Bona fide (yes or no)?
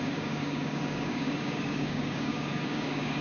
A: no